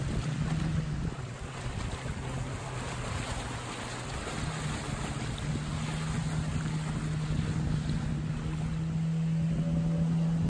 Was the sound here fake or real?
real